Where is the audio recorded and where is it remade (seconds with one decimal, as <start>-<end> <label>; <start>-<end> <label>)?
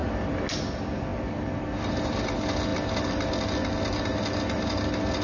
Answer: 0.0-5.2 recorded